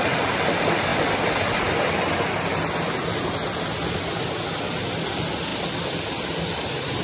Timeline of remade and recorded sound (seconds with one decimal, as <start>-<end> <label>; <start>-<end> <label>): 0.0-7.0 recorded